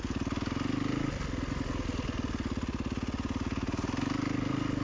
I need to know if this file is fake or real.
real